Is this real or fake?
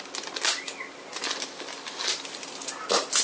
real